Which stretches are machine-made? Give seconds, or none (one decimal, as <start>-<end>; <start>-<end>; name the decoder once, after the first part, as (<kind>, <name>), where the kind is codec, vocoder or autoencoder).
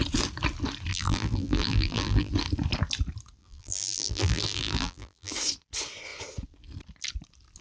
0.9-2.3 (vocoder, BigVGAN v2); 3.4-5.3